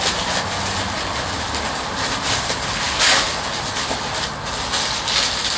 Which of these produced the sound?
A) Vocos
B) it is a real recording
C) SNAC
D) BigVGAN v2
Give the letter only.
B